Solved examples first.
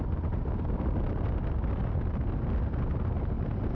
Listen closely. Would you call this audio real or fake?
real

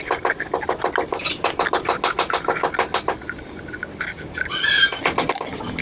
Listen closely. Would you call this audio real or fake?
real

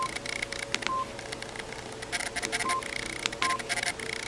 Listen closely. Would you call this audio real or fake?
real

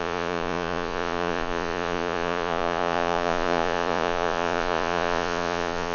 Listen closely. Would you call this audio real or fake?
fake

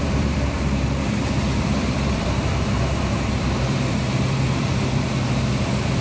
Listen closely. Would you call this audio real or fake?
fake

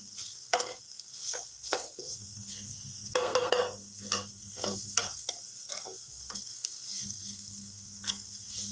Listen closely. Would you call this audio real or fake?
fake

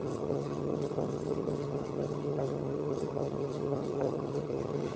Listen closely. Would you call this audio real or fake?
fake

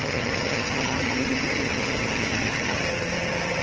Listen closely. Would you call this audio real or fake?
fake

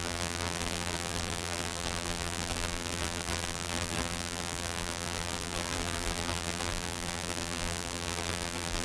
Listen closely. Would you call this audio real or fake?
fake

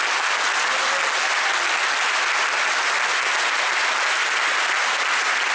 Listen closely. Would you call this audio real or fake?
real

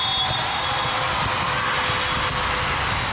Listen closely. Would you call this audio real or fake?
real